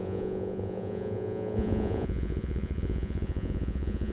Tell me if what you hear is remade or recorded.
remade